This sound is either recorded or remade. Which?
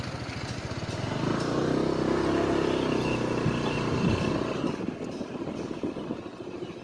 recorded